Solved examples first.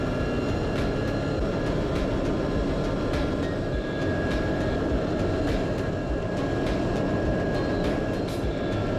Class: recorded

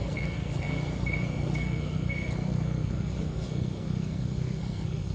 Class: remade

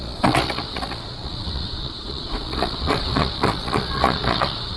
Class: remade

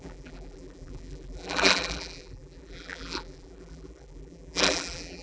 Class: remade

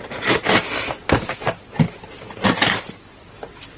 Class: recorded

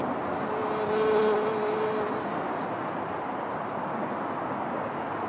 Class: recorded